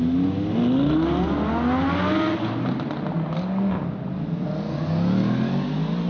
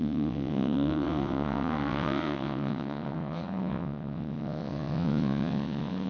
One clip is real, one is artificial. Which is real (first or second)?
first